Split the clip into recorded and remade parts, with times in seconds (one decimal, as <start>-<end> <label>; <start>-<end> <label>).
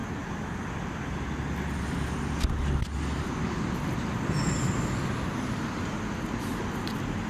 0.0-7.3 recorded